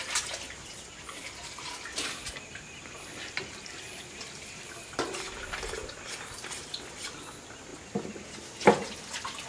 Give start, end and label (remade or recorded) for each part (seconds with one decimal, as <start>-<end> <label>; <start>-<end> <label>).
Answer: 0.0-9.5 recorded